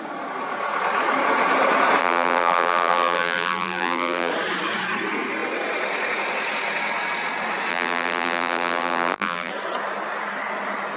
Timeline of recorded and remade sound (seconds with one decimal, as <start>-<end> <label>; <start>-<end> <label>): 0.0-2.0 recorded; 2.0-4.3 remade; 4.3-7.7 recorded; 7.7-9.5 remade; 9.5-11.0 recorded